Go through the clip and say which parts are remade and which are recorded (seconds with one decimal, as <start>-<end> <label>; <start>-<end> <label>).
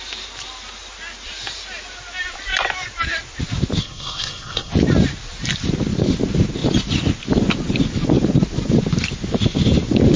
0.0-3.8 recorded; 3.8-4.7 remade; 4.7-10.2 recorded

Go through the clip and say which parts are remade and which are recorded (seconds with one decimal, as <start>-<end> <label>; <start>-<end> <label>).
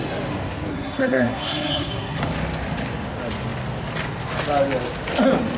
0.0-0.7 recorded; 0.7-2.2 remade; 2.2-5.6 recorded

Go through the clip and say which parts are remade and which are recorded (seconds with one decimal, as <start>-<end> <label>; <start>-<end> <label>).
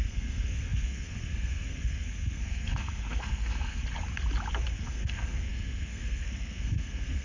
0.0-3.8 remade; 3.8-4.8 recorded; 4.8-7.2 remade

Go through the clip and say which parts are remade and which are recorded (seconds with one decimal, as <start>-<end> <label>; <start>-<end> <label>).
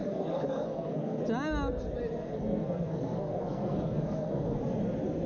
0.0-1.2 remade; 1.2-2.2 recorded; 2.2-4.6 remade; 4.6-5.3 recorded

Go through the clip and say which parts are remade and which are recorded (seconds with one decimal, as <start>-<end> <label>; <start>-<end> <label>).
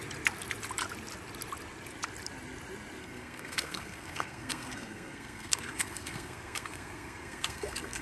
0.0-3.0 recorded; 3.0-8.0 remade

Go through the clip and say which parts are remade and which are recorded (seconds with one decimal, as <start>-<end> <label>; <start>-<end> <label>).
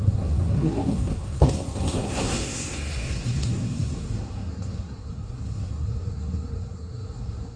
0.0-7.6 remade